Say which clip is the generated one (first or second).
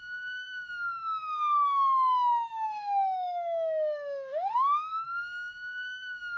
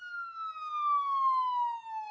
first